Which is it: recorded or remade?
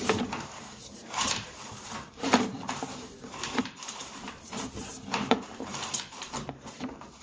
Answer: remade